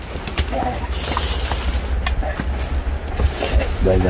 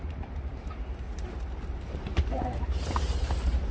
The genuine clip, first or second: first